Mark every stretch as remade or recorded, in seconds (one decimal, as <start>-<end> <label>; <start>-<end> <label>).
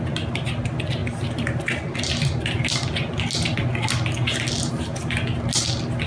0.0-6.1 recorded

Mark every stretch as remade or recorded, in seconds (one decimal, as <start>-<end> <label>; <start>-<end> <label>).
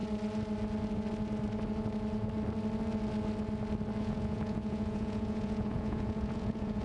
0.0-4.0 recorded; 4.0-6.8 remade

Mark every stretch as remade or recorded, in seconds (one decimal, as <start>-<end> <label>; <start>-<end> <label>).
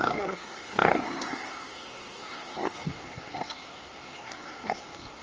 0.0-5.2 remade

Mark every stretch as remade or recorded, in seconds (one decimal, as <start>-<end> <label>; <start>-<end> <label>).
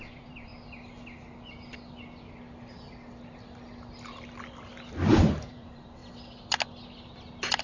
0.0-0.5 remade; 0.5-5.1 recorded; 5.1-6.0 remade; 6.0-7.6 recorded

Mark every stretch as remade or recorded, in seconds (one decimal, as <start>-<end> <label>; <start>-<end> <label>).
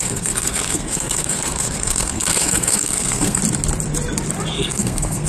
0.0-3.4 remade; 3.4-4.5 recorded; 4.5-5.3 remade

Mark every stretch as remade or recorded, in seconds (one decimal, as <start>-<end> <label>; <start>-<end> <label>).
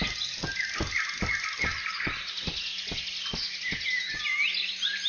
0.0-1.7 recorded; 1.7-2.3 remade; 2.3-5.1 recorded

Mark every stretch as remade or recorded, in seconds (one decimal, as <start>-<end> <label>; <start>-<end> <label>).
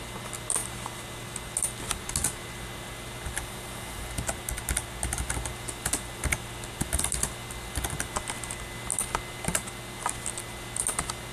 0.0-11.3 recorded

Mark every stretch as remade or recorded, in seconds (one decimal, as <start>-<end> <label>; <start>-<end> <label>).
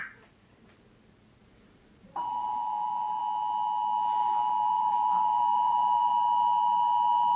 0.0-1.4 recorded; 1.4-3.2 remade; 3.2-4.2 recorded; 4.2-6.1 remade; 6.1-7.4 recorded